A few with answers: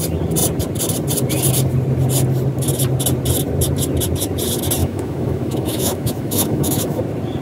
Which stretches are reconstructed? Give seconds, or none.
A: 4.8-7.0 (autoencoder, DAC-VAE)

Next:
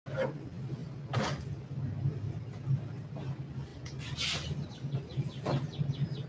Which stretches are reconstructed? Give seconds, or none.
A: none

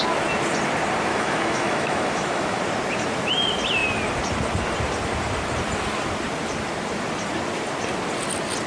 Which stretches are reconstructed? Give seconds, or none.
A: 1.1-2.6 (autoencoder, DAC-VAE)

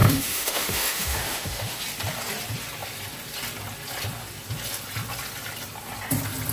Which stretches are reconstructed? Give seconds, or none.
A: 0.0-1.8 (autoencoder, DAC-VAE)

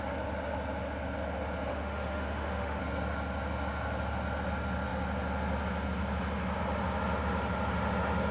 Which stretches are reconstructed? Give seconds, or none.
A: 1.7-2.8 (autoencoder, DAC-VAE)

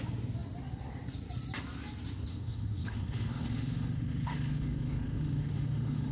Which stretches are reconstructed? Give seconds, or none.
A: 2.3-6.1 (autoencoder, DAC-VAE)